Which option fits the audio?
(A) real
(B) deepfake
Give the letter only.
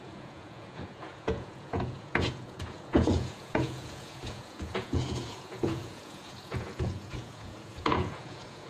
B